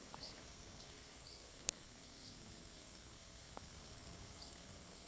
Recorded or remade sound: remade